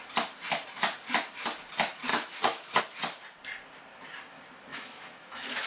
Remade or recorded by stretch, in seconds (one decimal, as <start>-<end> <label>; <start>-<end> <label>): 0.0-2.1 recorded; 2.1-2.8 remade; 2.8-4.7 recorded; 4.7-5.7 remade